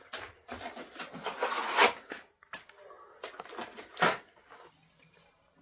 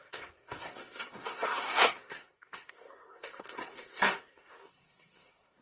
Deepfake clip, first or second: second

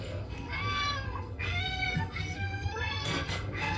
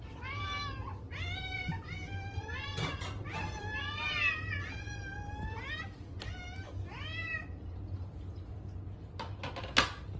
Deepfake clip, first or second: first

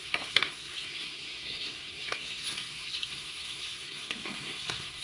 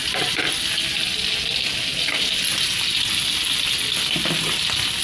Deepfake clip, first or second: first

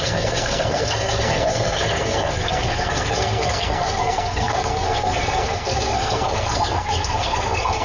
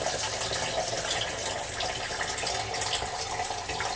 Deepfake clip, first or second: first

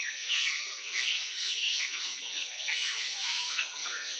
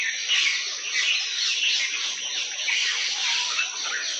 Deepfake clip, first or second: first